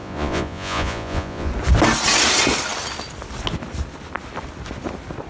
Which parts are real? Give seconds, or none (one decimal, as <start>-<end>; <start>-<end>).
1.5-5.3